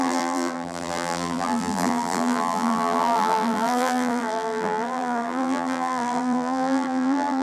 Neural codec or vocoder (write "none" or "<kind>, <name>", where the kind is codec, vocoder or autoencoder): vocoder, BigVGAN v2